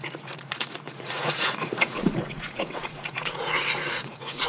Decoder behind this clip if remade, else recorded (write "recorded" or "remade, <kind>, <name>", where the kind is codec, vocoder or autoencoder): remade, vocoder, Vocos